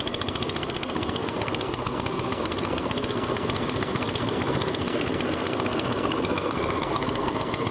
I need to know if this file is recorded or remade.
remade